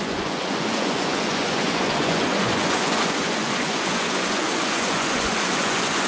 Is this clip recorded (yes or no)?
no